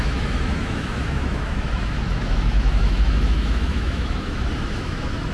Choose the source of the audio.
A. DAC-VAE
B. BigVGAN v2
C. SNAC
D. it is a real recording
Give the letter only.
A